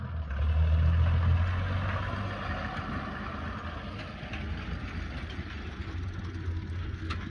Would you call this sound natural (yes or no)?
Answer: yes